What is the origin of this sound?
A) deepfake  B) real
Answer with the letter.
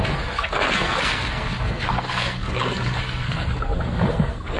A